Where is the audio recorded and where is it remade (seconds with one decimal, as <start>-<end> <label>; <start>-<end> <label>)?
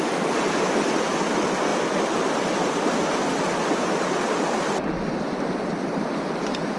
0.0-6.8 recorded